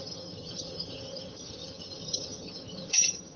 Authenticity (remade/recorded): remade